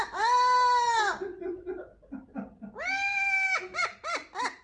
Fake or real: real